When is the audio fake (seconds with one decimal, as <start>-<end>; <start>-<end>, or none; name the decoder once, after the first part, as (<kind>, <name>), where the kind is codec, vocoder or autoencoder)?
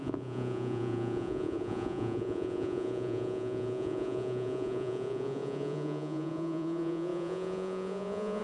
0.0-8.4 (vocoder, Vocos)